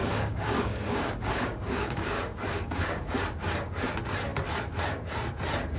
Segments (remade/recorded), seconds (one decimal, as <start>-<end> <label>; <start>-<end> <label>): 0.0-3.2 remade; 3.2-5.8 recorded